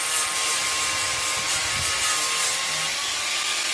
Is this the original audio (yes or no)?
no